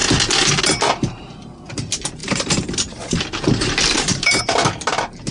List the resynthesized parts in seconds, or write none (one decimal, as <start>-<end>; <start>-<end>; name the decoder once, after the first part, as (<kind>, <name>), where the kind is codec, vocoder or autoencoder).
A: 2.2-4.4 (vocoder, BigVGAN v2)